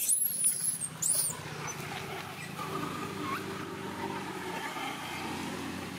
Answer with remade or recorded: recorded